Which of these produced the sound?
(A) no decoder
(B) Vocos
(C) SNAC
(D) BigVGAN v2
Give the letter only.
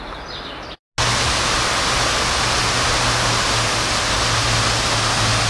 A